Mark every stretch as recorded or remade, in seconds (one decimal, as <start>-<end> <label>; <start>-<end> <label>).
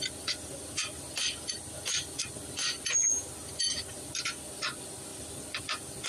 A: 0.0-6.1 recorded